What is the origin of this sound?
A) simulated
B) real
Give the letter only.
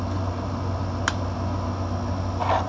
B